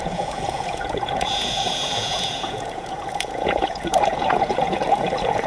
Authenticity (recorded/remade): remade